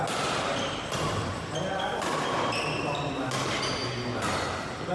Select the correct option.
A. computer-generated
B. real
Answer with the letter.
B